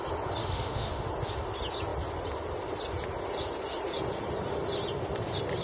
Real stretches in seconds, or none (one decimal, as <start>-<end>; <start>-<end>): 0.0-0.4; 1.1-5.6

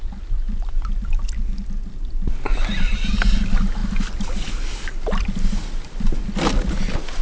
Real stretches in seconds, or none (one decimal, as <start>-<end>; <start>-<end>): 0.0-7.2

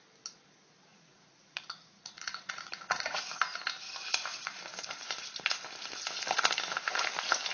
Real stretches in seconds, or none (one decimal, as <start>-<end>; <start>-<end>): 0.0-0.9; 3.4-4.3; 4.9-7.5

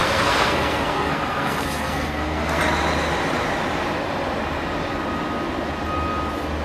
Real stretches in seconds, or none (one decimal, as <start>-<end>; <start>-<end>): 2.6-6.6

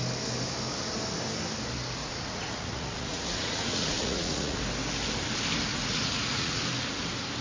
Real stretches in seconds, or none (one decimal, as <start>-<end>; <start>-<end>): 0.0-2.0; 4.6-5.7; 6.6-7.4

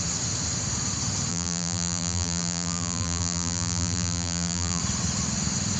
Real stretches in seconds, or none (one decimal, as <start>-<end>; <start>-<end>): 0.0-1.3; 4.8-5.8

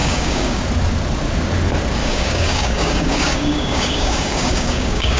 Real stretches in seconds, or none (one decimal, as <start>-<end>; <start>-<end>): 0.6-2.0

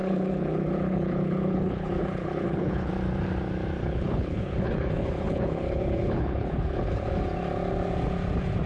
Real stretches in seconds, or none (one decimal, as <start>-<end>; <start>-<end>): 2.9-3.8; 7.1-8.7